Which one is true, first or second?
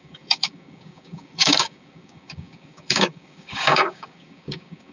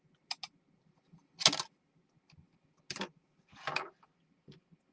second